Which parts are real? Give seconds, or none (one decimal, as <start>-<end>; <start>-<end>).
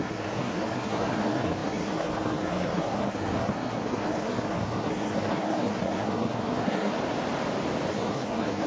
6.9-7.9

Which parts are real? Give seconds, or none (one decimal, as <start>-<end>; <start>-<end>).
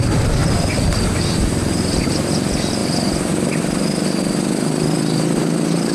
0.0-0.4; 2.0-5.9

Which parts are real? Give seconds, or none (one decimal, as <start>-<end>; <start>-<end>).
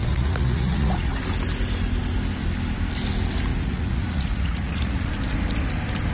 1.2-3.5; 5.1-6.1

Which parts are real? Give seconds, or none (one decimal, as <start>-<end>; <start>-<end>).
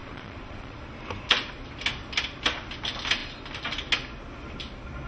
0.8-5.1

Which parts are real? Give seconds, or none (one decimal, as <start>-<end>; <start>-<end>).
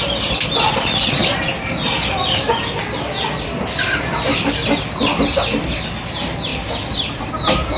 0.0-7.8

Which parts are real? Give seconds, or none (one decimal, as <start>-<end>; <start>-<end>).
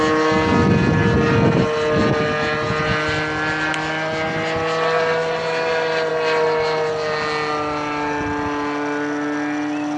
0.0-10.0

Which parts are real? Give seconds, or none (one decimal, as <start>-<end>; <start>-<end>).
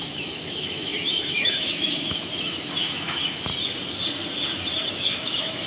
3.5-4.9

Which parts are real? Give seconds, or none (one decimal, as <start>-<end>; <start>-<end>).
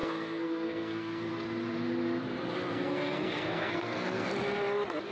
1.3-2.7; 4.3-5.1